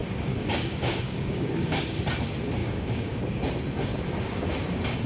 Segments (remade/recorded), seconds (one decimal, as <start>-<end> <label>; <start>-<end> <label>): 0.0-2.0 remade; 2.0-2.6 recorded; 2.6-3.4 remade; 3.4-5.1 recorded